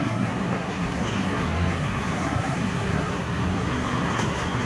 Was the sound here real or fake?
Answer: fake